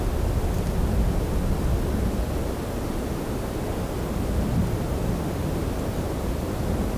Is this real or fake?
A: real